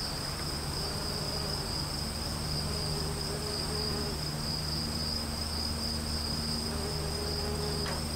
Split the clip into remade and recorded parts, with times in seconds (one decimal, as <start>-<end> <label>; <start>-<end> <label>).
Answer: 0.0-8.2 recorded

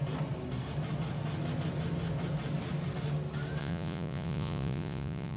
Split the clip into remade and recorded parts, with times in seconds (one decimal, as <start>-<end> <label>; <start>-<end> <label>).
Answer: 0.0-3.6 recorded; 3.6-5.4 remade

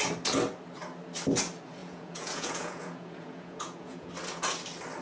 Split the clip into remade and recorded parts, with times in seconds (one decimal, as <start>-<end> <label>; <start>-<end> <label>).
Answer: 0.0-1.8 recorded; 1.8-4.1 remade; 4.1-5.0 recorded

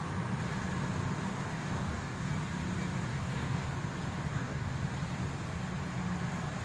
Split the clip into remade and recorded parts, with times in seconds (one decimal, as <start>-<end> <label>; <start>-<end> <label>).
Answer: 0.0-1.3 recorded; 1.3-2.3 remade; 2.3-3.1 recorded; 3.1-3.7 remade; 3.7-4.3 recorded; 4.3-4.8 remade; 4.8-6.6 recorded

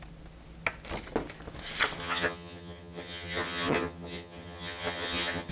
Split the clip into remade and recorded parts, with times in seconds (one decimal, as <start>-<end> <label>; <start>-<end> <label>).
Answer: 0.0-2.0 recorded; 2.0-5.5 remade